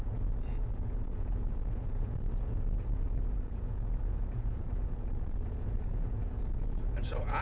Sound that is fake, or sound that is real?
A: fake